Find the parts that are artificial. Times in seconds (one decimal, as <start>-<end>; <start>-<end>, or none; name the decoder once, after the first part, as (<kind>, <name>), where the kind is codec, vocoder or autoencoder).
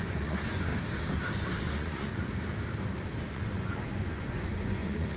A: 0.0-0.7 (vocoder, Vocos); 1.6-2.1; 3.2-5.2